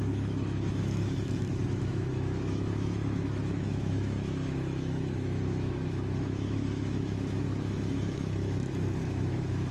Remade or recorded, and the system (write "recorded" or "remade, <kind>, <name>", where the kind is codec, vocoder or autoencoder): remade, autoencoder, DAC-VAE